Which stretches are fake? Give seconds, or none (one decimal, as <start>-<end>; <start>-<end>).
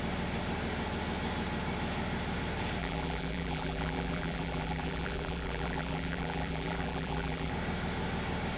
2.8-7.5